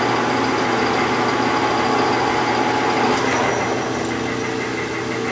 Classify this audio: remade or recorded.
recorded